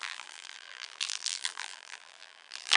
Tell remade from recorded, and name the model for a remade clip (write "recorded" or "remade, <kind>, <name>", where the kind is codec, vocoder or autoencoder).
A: remade, vocoder, BigVGAN v2